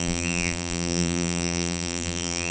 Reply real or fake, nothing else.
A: fake